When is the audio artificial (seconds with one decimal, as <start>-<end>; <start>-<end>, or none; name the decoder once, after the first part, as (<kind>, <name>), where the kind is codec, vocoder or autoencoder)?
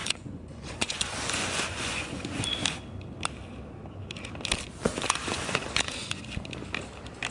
0.0-2.4 (vocoder, Vocos); 4.9-6.2